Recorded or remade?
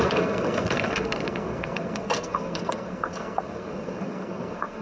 remade